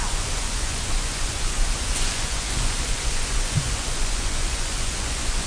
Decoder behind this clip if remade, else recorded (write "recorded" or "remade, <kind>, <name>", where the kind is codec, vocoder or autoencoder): remade, vocoder, Vocos